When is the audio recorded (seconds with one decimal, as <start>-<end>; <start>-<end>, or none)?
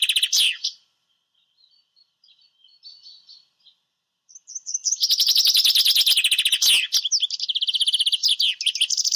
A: 0.0-9.2